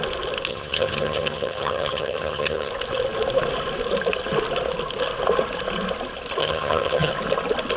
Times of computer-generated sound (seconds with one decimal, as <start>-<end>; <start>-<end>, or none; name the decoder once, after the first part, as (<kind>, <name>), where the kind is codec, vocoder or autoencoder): 0.5-2.7 (vocoder, HiFi-GAN); 6.4-7.1